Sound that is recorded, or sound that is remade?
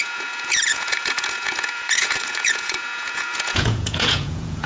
remade